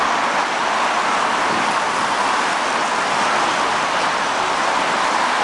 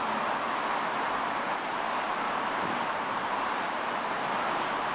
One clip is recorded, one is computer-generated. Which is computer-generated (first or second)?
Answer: second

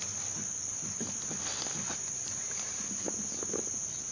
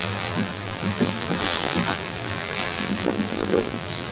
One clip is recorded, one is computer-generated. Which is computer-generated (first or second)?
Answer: second